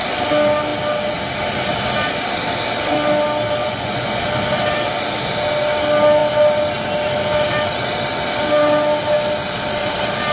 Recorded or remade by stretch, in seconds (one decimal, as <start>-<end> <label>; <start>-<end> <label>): 0.0-3.6 recorded; 3.6-4.2 remade; 4.2-10.3 recorded